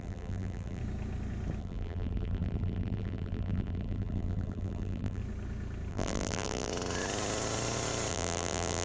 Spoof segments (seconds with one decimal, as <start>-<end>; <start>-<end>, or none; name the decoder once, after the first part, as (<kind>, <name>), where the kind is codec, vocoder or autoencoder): 0.0-0.8 (vocoder, BigVGAN v2); 1.6-5.2; 5.9-6.7; 8.1-8.8